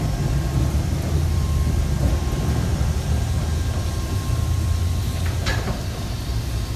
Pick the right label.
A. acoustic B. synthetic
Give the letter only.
B